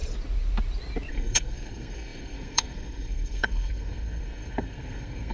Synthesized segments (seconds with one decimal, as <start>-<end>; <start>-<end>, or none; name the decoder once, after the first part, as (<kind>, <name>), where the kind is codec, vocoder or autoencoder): 1.1-5.3 (codec, SNAC)